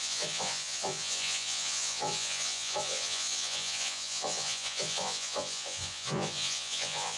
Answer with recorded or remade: remade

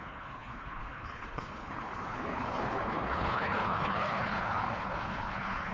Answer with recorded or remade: remade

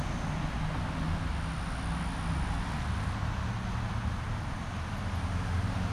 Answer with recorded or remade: recorded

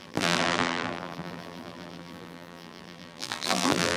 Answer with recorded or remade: remade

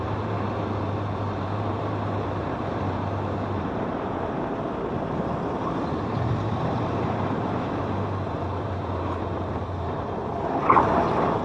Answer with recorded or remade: remade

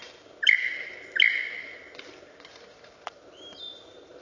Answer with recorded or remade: remade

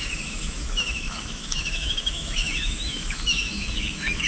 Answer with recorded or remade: remade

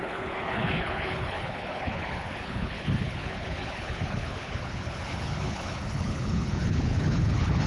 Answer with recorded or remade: remade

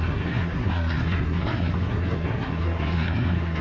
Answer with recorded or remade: remade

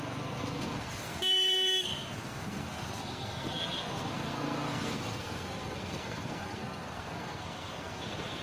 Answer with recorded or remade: remade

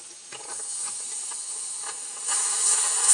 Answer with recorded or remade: recorded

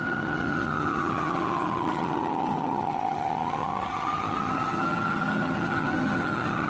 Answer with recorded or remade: remade